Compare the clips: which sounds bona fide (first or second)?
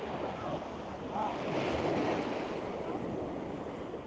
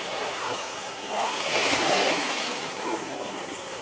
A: first